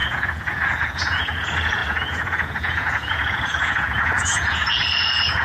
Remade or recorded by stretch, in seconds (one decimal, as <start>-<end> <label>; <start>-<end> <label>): 0.0-5.4 remade

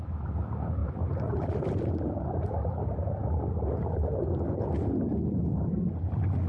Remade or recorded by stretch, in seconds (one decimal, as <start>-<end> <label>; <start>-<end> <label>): 0.0-6.5 recorded